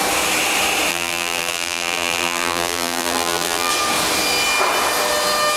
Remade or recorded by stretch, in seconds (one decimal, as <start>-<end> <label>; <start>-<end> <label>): 0.0-0.9 recorded; 0.9-3.7 remade; 3.7-5.6 recorded